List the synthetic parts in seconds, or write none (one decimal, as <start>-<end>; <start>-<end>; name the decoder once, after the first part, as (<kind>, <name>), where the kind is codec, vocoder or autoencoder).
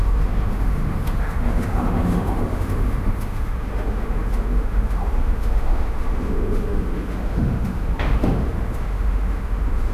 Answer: 0.0-9.9 (autoencoder, DAC-VAE)